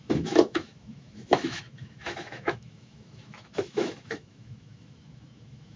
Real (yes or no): no